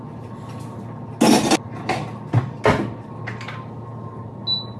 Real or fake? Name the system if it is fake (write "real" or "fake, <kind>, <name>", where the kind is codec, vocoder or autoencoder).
real